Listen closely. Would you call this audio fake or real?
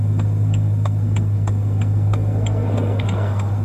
fake